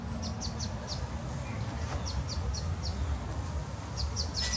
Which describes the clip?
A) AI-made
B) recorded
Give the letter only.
B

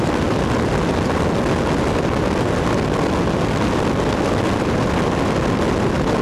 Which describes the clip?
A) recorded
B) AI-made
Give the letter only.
A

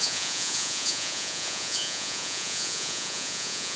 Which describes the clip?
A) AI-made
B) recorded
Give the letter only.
A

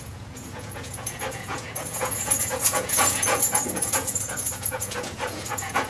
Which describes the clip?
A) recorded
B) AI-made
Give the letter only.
B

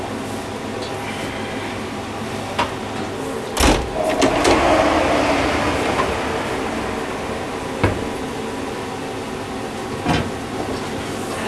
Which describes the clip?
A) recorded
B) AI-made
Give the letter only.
A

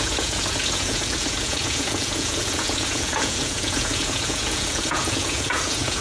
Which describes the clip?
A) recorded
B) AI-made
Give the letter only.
B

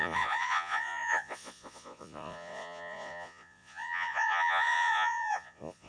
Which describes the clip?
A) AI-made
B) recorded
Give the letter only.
A